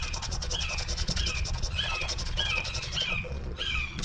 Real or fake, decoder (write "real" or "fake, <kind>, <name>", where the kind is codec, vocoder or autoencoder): fake, vocoder, Vocos